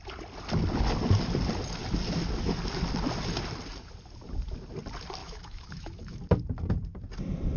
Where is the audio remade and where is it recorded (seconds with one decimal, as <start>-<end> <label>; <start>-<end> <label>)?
0.0-5.2 recorded; 5.2-6.2 remade; 6.2-7.6 recorded